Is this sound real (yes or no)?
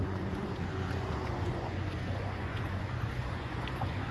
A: no